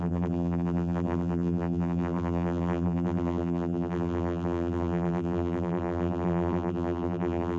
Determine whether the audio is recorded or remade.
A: remade